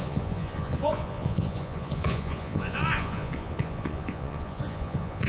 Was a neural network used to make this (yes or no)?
yes